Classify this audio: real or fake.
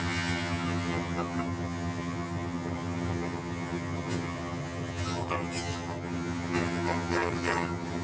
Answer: fake